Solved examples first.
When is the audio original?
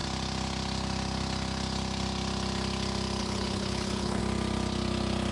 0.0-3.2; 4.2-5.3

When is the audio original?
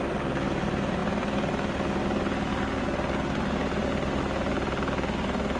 0.0-5.6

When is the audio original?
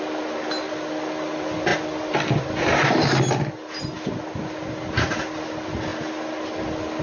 0.0-7.0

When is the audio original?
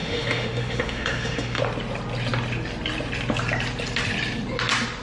1.6-5.0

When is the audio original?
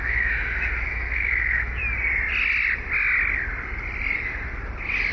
1.8-5.1